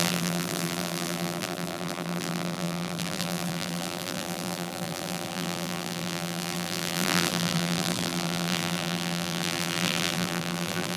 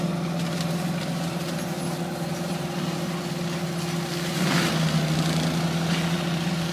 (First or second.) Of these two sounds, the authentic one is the second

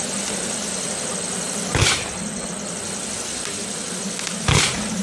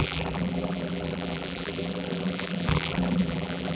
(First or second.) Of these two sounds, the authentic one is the first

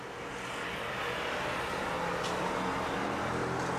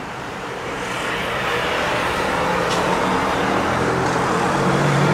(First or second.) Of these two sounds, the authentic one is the first